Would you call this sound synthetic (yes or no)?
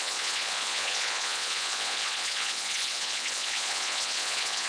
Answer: yes